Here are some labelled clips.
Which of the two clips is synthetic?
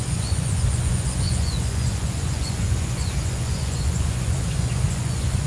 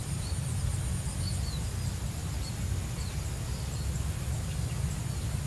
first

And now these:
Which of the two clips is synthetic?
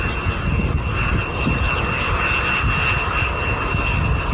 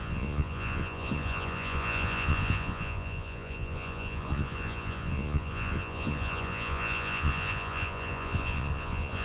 second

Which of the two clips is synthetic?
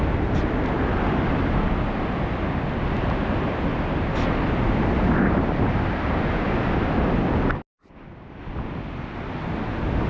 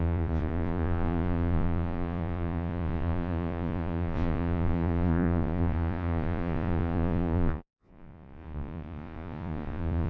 second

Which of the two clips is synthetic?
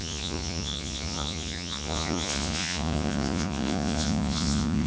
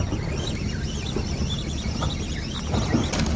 first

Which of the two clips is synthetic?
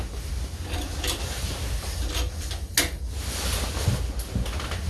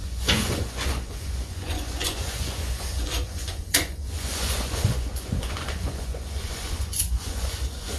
second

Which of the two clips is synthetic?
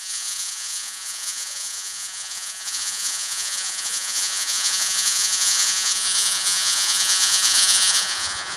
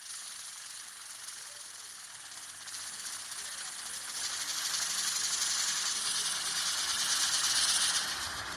first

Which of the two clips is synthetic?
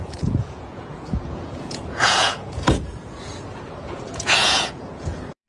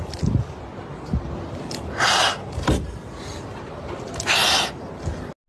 first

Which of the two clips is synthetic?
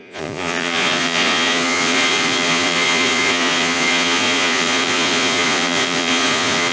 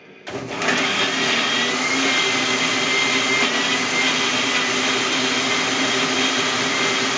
first